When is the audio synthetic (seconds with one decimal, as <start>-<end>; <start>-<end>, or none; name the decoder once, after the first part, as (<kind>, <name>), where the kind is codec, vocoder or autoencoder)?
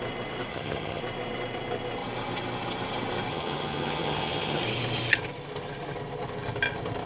0.5-1.0 (vocoder, HiFi-GAN); 3.3-4.6